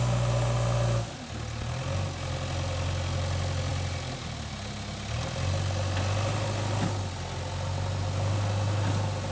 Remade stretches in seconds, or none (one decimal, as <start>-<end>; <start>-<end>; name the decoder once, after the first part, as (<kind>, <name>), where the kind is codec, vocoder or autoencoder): none